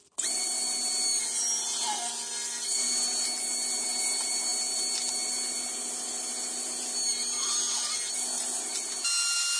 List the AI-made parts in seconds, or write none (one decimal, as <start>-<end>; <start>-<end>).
none